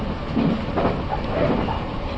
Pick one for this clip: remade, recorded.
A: recorded